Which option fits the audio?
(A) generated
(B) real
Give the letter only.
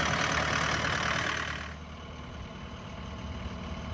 B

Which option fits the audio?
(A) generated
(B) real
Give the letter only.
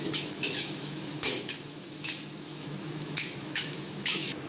A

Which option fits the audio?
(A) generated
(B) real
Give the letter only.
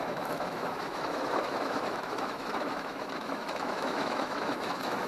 A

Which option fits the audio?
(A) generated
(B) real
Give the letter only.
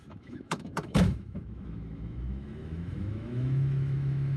A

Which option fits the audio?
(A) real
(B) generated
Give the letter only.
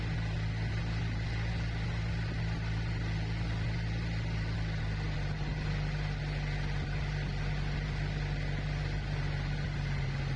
A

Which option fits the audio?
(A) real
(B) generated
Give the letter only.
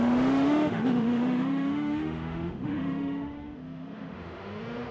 B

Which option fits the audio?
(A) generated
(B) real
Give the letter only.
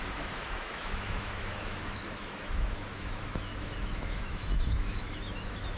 A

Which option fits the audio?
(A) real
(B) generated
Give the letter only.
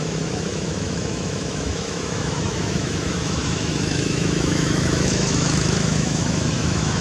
B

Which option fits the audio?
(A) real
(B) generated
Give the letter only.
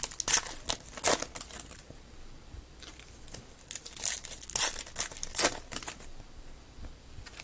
A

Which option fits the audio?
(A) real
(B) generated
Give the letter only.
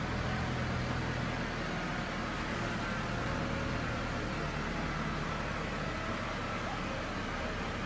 A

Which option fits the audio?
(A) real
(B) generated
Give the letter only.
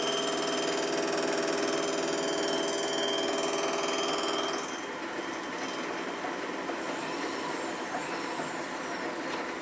A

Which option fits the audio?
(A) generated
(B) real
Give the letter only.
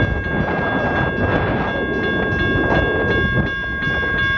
B